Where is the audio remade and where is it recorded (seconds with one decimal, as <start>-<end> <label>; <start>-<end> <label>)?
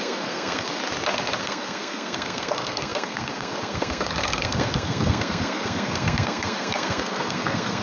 0.0-0.8 remade; 0.8-1.4 recorded; 1.4-7.8 remade